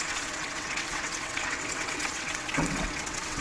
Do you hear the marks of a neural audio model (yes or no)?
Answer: yes